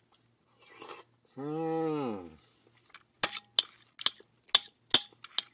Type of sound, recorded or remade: recorded